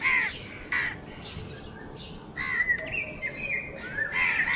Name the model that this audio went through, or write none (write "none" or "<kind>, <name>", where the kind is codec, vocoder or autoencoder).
none